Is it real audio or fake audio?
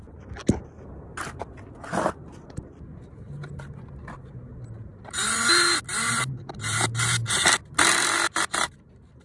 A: real